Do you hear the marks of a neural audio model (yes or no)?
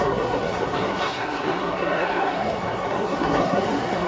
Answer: yes